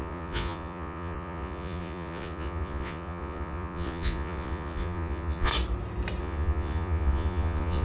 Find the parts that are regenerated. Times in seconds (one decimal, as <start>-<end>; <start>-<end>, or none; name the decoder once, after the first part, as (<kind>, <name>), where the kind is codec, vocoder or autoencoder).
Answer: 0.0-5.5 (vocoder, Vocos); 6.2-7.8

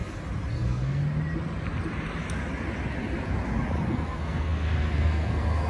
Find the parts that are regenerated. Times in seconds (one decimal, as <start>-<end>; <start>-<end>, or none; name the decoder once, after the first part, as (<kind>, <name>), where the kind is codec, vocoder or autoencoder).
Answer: 0.5-1.0 (codec, SNAC); 3.9-5.7

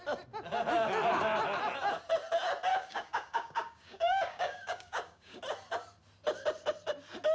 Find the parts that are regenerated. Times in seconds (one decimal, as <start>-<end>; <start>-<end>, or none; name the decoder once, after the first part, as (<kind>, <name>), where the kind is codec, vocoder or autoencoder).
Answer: 2.7-5.4 (codec, DAC)

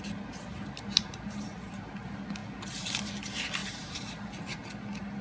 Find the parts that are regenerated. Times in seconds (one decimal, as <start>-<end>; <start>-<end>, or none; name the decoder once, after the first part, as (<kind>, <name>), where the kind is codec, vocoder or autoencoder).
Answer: 0.5-1.9 (vocoder, BigVGAN v2); 3.6-4.1

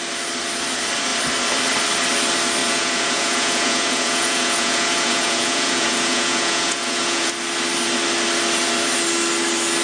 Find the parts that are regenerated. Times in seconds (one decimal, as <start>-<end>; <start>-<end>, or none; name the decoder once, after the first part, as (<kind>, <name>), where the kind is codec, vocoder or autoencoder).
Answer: 2.6-7.3 (vocoder, Vocos)

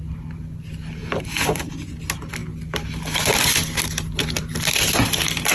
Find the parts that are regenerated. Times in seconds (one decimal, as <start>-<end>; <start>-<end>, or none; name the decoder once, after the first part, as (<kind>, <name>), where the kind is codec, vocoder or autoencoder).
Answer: 1.0-1.7 (vocoder, BigVGAN v2)

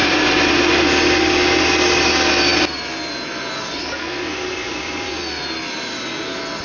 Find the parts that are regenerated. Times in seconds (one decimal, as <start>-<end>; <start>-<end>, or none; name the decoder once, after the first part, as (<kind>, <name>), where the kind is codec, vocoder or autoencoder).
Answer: none

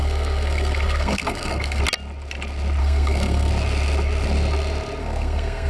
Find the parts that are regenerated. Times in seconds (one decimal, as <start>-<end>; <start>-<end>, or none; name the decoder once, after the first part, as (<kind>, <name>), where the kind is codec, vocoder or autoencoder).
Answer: 0.0-1.8 (codec, SNAC); 2.8-3.5; 5.0-5.7